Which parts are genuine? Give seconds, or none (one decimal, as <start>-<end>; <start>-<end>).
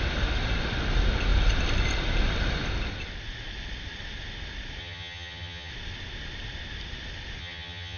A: 0.0-4.8; 5.7-7.4